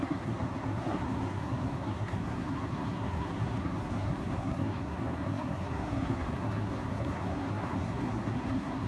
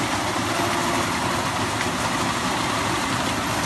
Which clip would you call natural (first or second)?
second